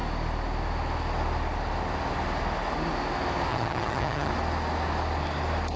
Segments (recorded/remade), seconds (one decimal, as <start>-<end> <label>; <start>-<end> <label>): 0.0-3.5 recorded; 3.5-4.3 remade; 4.3-5.8 recorded